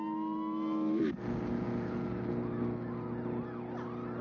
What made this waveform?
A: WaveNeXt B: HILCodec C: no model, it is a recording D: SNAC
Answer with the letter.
C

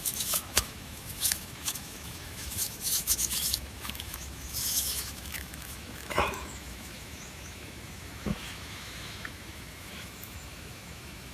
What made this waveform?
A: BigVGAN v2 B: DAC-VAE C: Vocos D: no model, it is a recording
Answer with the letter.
B